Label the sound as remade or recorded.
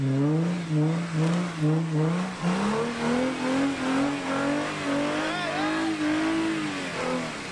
recorded